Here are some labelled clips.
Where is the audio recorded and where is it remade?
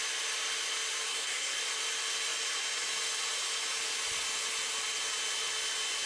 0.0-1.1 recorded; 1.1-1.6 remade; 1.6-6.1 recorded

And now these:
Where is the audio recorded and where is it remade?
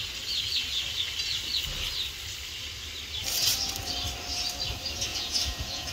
0.0-5.1 recorded; 5.1-5.9 remade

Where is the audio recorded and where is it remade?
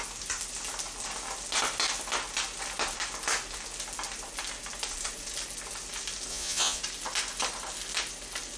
0.0-6.3 recorded; 6.3-6.8 remade; 6.8-8.6 recorded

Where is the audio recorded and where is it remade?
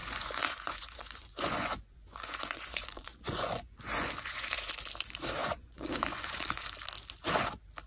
0.0-4.7 remade; 4.7-5.4 recorded; 5.4-6.7 remade; 6.7-7.9 recorded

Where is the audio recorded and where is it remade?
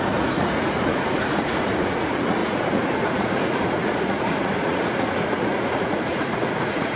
0.0-7.0 remade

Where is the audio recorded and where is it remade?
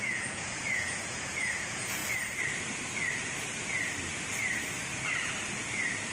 0.0-2.0 remade; 2.0-6.1 recorded